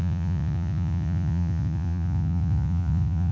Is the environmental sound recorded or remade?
remade